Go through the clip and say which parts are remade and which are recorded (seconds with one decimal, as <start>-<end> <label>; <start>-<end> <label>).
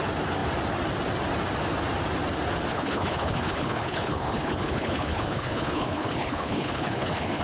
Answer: 0.0-2.7 recorded; 2.7-7.4 remade